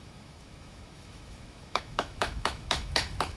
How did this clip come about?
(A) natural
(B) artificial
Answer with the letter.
B